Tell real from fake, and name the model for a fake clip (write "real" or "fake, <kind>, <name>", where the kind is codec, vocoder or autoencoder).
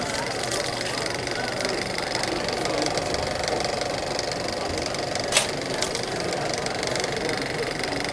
fake, vocoder, BigVGAN v2